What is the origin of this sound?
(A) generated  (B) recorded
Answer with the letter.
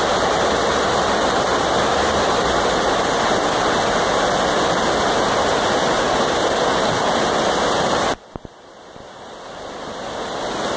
B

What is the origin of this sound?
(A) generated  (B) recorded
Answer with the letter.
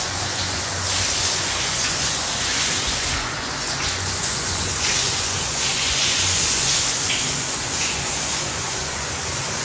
A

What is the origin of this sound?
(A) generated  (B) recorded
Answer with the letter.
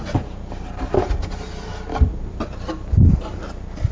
B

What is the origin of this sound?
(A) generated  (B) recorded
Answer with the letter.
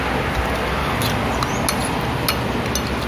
B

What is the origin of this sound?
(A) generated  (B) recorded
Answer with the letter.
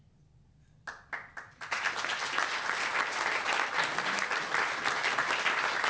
B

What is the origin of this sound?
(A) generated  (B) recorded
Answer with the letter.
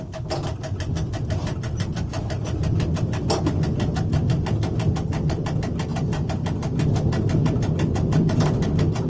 B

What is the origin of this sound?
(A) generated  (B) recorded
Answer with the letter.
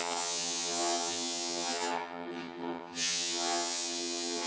A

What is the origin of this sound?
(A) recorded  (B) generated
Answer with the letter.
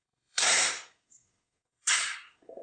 B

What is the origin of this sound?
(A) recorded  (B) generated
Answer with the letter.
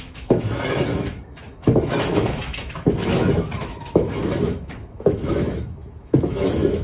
B